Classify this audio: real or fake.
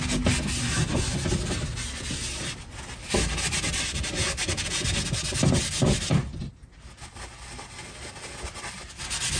real